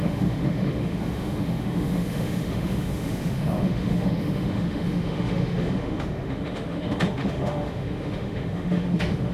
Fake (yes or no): yes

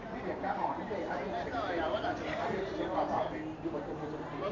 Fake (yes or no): yes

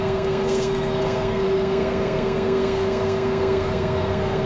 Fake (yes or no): yes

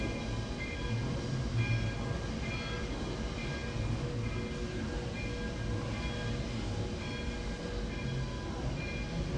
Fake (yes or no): no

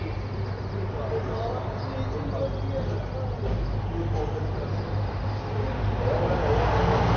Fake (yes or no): no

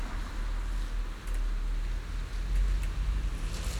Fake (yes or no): no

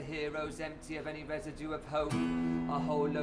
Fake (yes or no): no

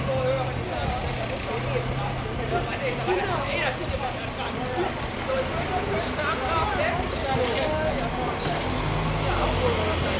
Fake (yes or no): no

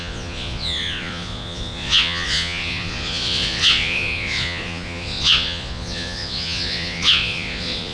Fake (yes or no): yes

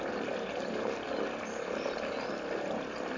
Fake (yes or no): no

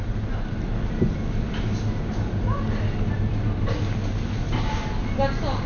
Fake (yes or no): no